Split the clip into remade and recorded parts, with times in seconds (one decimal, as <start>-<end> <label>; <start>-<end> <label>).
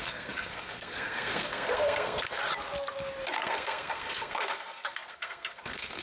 0.0-2.4 remade; 2.4-3.3 recorded; 3.3-6.0 remade